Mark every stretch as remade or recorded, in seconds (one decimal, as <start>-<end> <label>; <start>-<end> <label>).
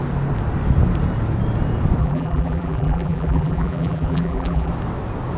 0.0-2.0 recorded; 2.0-4.7 remade; 4.7-5.4 recorded